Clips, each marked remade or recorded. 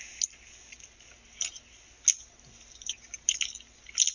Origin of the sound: recorded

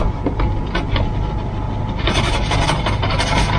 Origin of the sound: recorded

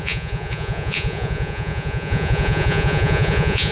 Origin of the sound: remade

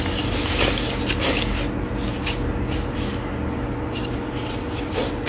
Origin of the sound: recorded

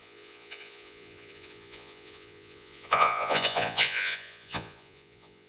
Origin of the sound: remade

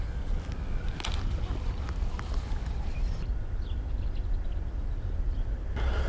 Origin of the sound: recorded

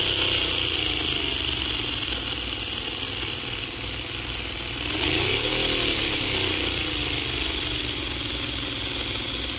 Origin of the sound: recorded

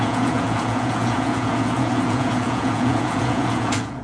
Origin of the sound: remade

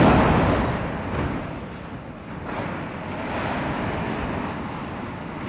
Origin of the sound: recorded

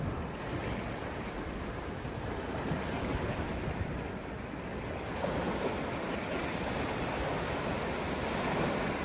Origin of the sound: recorded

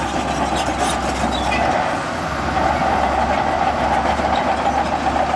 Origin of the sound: recorded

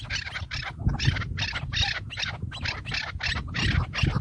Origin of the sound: recorded